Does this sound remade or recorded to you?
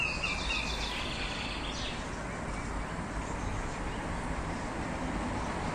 recorded